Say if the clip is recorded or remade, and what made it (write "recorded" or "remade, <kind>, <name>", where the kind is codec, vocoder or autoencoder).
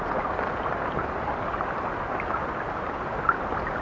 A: recorded